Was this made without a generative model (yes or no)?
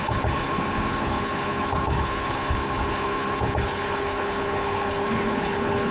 no